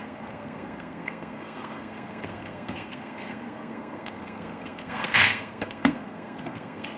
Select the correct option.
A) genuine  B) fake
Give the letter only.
B